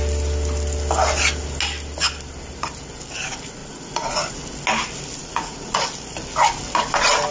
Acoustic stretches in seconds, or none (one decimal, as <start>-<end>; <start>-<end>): 0.0-3.6; 4.4-5.2; 5.8-7.3